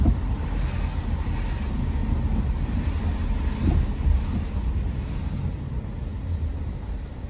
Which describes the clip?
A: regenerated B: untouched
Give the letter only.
B